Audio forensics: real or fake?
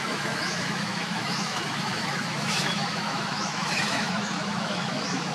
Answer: fake